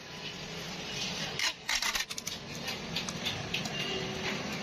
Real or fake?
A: real